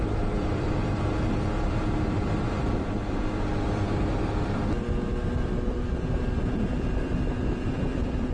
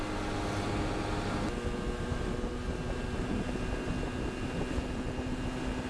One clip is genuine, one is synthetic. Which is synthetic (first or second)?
first